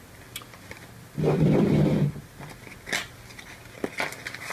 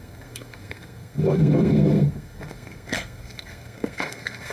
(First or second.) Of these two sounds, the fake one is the second